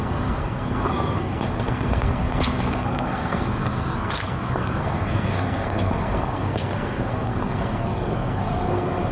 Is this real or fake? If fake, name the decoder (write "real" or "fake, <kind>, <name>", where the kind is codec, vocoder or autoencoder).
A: fake, codec, SNAC